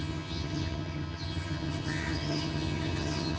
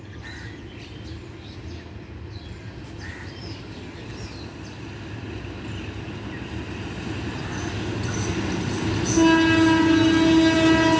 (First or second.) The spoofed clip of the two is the first